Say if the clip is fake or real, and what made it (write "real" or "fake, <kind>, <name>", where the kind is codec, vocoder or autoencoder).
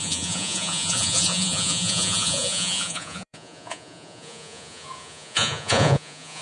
fake, vocoder, Vocos